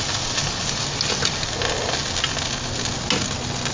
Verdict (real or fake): real